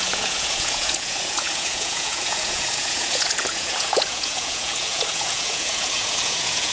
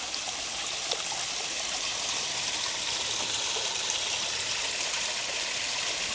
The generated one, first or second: first